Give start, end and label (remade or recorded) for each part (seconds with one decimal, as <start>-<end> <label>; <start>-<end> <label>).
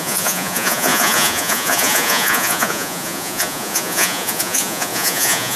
0.0-5.6 remade